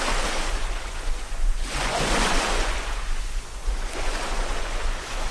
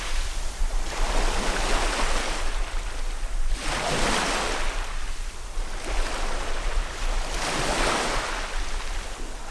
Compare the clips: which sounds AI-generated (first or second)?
first